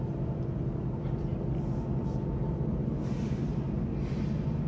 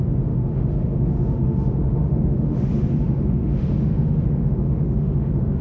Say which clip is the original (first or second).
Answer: first